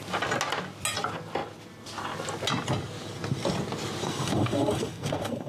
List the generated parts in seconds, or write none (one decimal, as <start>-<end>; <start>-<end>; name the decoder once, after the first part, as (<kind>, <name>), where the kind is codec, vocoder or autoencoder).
4.0-5.5 (codec, SNAC)